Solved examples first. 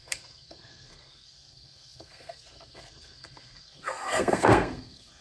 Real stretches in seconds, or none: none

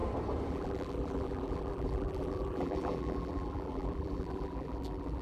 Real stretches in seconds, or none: 0.0-0.5

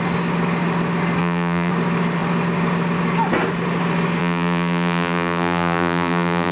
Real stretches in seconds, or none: 0.0-1.2; 1.7-4.2

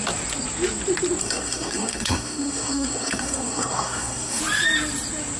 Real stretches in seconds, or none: 0.0-1.2; 4.4-5.4